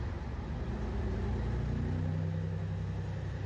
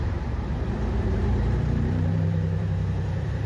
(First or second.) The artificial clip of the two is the second